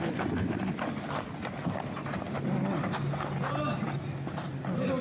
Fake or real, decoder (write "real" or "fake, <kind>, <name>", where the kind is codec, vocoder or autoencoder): real